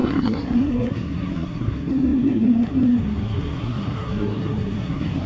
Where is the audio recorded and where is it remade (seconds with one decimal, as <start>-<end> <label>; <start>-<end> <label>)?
0.0-5.3 remade